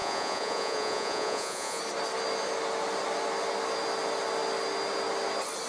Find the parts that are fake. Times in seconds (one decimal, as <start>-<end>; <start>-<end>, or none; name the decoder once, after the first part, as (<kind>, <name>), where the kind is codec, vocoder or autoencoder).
0.0-1.8 (vocoder, Vocos)